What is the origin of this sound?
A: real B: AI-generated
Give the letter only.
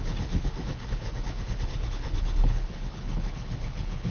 B